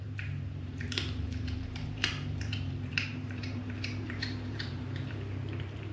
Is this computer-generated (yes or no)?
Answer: yes